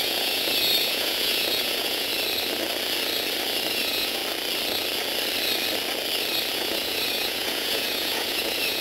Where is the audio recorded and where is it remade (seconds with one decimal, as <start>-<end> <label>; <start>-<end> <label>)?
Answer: 0.0-2.1 remade; 2.1-3.7 recorded; 3.7-4.2 remade; 4.2-6.5 recorded; 6.5-8.8 remade